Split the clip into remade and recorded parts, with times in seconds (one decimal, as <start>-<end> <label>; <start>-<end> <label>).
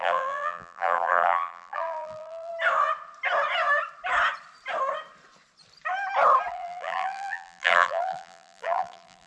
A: 0.0-2.5 remade; 2.5-6.5 recorded; 6.5-9.3 remade